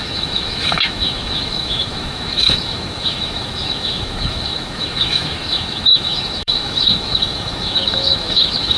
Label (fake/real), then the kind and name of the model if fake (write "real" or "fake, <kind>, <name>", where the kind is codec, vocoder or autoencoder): fake, autoencoder, DAC-VAE